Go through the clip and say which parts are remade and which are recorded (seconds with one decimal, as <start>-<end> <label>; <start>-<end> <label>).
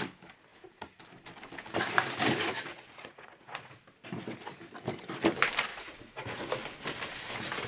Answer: 0.0-2.7 recorded; 2.7-3.8 remade; 3.8-5.7 recorded; 5.7-6.5 remade; 6.5-7.7 recorded